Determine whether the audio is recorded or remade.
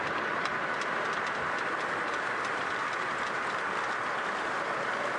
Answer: recorded